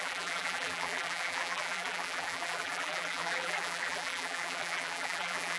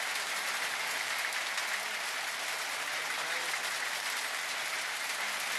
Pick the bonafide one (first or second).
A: second